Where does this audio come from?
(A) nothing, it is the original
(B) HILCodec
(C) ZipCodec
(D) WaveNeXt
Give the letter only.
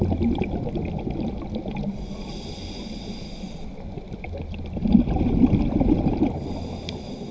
A